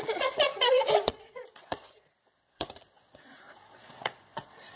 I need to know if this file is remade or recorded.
remade